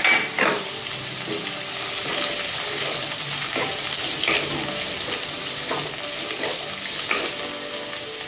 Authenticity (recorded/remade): recorded